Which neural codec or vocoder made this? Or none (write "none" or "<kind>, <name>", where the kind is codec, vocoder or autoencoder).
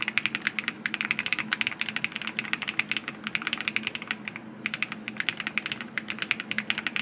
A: none